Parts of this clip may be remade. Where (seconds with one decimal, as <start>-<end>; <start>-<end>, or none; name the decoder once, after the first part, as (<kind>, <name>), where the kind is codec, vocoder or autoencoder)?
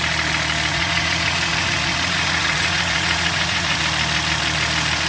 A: 0.7-3.8 (vocoder, Vocos)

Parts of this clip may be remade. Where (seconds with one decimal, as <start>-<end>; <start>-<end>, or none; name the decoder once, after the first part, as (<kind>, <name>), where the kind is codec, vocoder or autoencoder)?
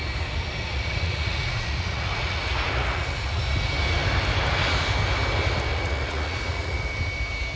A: 0.6-3.4 (vocoder, Vocos); 5.7-6.9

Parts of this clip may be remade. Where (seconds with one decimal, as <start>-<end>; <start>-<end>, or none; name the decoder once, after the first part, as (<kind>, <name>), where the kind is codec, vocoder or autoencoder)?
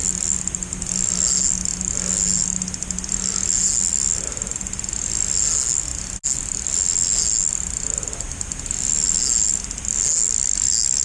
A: none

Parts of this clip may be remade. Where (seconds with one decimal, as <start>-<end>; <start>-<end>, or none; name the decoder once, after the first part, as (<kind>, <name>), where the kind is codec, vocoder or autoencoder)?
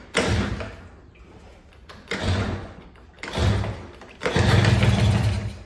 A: 1.8-2.9 (vocoder, Vocos)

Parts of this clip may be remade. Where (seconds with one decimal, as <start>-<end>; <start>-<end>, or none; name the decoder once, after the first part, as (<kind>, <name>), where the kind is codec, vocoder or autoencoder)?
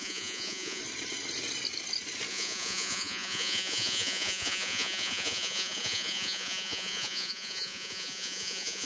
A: 0.0-0.8 (vocoder, Vocos); 2.3-8.9